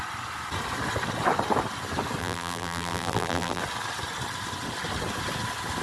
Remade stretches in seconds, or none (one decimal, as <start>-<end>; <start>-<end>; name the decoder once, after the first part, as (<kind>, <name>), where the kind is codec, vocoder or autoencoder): 2.2-3.6 (vocoder, BigVGAN v2)